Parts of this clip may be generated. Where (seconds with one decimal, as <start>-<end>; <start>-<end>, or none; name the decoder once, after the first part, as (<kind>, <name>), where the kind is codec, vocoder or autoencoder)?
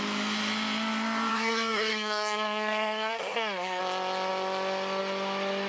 1.3-3.8 (codec, SNAC)